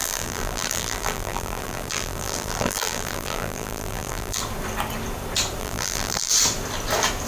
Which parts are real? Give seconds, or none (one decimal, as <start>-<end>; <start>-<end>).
4.4-5.6; 6.3-7.3

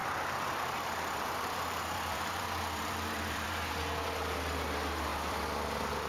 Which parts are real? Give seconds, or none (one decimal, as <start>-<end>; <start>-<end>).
3.7-5.1

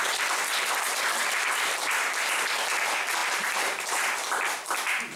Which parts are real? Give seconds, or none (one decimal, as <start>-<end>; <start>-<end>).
0.0-1.2; 2.4-5.2